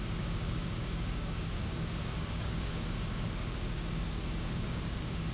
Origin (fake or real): fake